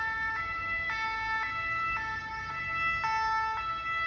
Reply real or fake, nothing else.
real